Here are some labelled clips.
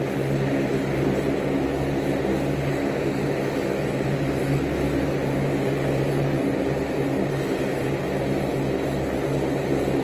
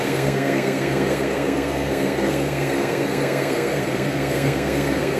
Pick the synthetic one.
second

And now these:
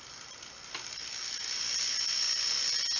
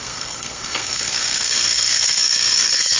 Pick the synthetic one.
second